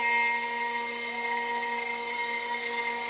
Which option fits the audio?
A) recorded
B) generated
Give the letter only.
A